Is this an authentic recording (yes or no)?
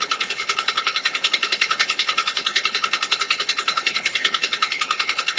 no